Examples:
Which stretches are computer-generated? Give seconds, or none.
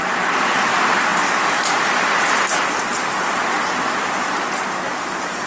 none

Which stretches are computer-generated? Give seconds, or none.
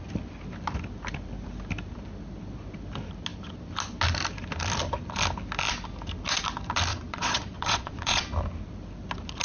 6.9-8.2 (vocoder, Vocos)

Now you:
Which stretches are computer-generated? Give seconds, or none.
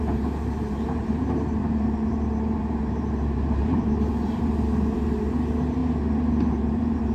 0.0-5.8 (vocoder, BigVGAN v2); 6.5-7.1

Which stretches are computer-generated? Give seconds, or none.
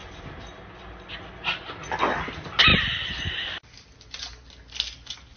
none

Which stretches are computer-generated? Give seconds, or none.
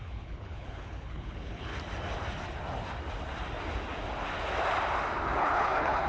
0.0-1.7 (codec, HILCodec); 5.4-6.1